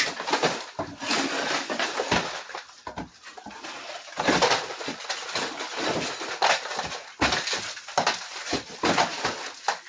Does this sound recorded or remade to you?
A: recorded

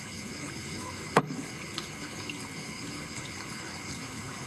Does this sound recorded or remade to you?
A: remade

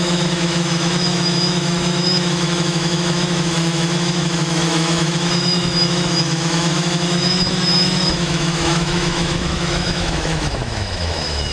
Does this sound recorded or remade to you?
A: remade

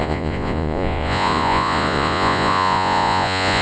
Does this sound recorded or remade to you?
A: remade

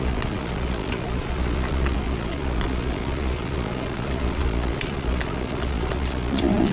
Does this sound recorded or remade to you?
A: remade